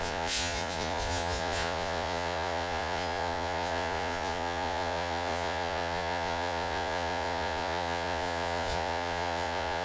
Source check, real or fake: fake